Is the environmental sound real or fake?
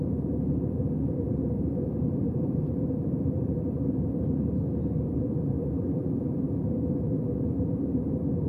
fake